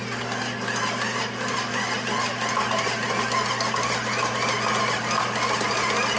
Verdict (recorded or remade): recorded